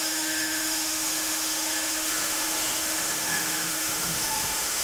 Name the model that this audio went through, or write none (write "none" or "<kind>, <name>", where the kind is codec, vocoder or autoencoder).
autoencoder, DAC-VAE